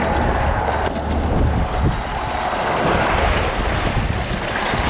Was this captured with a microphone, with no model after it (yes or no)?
yes